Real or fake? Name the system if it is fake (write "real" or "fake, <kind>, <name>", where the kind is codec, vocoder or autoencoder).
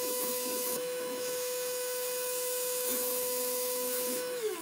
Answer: fake, autoencoder, DAC-VAE